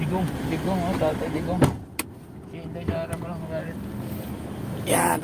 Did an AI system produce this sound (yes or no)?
no